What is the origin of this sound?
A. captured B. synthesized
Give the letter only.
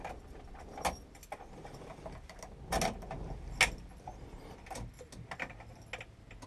A